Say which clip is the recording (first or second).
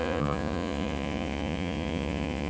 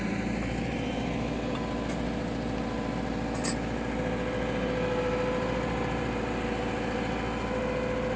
second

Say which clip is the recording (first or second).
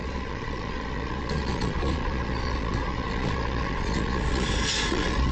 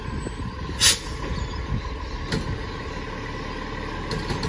second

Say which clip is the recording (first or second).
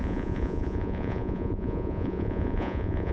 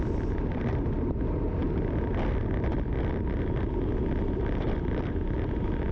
second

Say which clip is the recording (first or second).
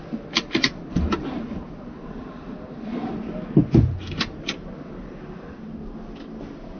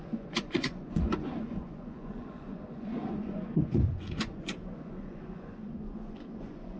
first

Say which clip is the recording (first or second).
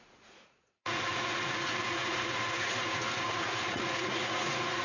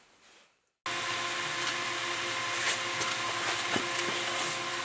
second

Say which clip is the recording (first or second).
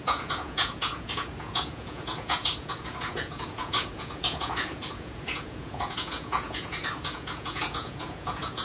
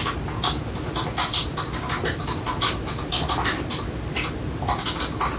second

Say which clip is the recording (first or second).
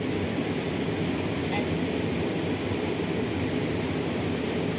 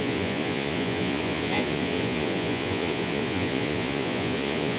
first